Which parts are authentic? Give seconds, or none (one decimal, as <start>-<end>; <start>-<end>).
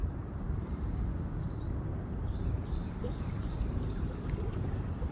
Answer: 0.8-1.9